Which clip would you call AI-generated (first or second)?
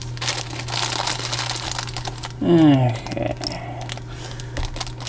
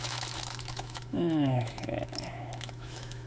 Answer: second